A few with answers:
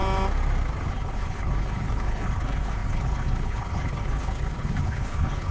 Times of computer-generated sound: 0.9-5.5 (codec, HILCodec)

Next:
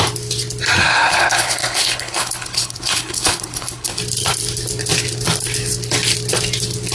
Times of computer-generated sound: 0.8-4.0 (codec, HILCodec)

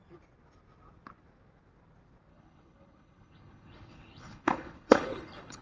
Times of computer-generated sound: 2.3-5.6 (codec, HILCodec)

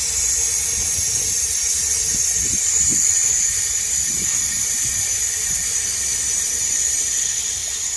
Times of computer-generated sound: none